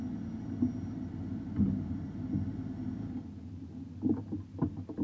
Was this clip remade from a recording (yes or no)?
no